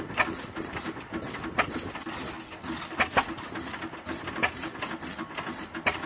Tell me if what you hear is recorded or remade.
recorded